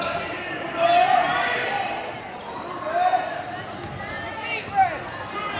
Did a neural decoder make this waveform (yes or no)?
no